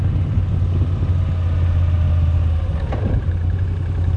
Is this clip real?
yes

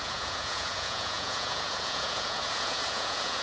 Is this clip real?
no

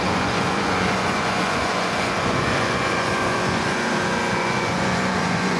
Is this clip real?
no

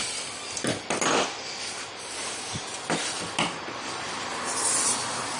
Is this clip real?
yes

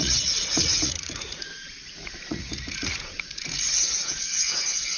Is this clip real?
no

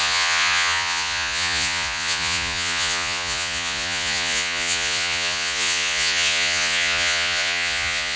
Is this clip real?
no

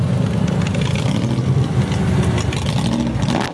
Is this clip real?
yes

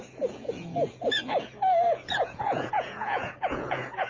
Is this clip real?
no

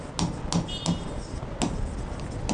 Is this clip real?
yes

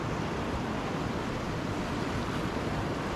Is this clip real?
yes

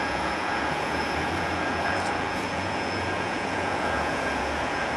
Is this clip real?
no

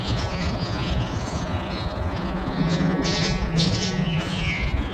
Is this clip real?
no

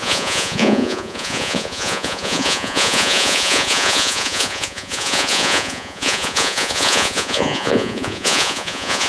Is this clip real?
no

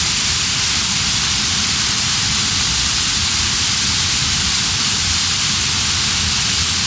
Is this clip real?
yes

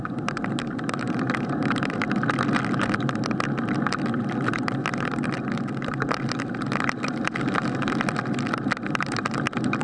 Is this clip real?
yes